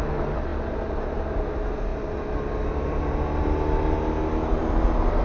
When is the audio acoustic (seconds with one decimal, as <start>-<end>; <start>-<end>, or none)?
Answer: 0.0-0.5; 1.4-5.2